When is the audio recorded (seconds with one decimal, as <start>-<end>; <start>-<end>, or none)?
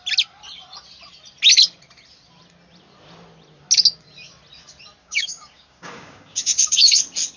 0.0-5.0; 7.0-7.4